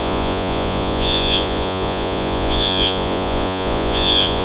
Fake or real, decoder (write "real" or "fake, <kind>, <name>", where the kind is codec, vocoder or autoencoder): fake, vocoder, Vocos